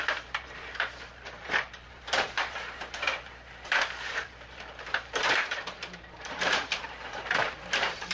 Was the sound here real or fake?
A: fake